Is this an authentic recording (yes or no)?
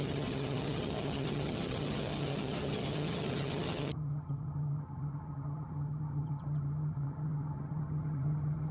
no